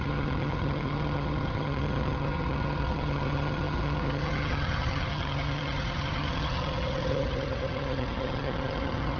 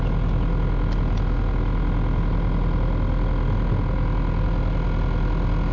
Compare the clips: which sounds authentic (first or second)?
second